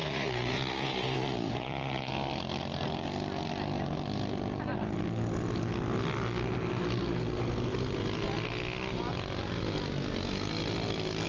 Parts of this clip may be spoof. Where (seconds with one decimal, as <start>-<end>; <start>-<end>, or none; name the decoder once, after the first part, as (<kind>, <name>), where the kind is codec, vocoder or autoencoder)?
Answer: 0.0-2.1 (vocoder, Vocos)